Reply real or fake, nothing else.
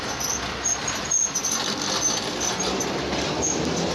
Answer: real